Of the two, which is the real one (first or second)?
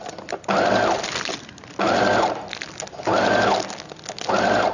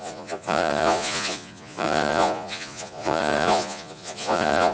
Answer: first